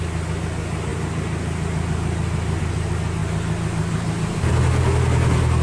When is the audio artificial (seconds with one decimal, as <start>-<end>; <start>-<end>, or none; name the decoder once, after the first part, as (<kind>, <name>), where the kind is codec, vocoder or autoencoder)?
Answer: none